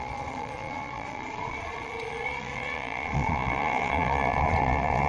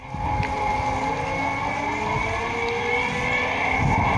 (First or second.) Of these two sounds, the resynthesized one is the first